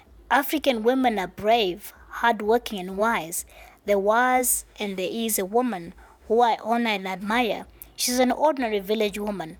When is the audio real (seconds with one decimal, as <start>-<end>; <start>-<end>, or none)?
0.0-4.4; 7.3-9.6